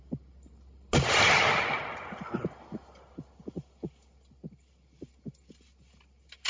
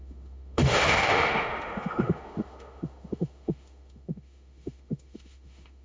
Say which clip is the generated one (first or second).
second